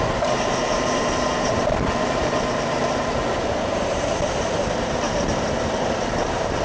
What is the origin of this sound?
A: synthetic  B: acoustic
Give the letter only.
A